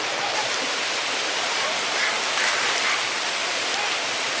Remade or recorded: recorded